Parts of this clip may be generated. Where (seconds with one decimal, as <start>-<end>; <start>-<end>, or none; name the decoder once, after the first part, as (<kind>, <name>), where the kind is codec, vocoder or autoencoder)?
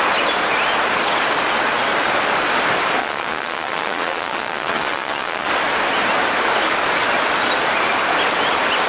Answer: 3.0-5.5 (vocoder, Vocos)